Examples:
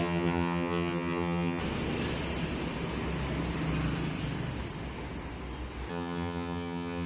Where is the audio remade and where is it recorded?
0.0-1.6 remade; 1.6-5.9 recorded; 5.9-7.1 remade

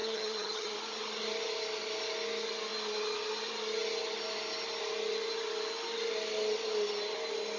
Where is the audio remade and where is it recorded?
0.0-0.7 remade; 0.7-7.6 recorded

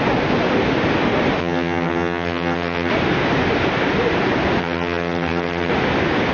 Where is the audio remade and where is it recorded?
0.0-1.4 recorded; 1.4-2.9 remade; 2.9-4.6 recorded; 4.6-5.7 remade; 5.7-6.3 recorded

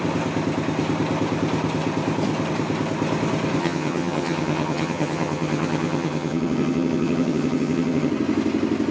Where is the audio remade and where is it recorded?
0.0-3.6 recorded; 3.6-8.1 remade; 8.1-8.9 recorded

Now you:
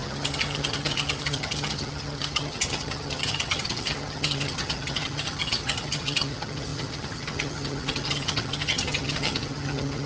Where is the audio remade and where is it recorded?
0.0-10.1 remade

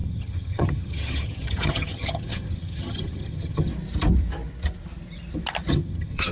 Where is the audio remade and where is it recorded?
0.0-3.7 remade; 3.7-5.7 recorded; 5.7-6.3 remade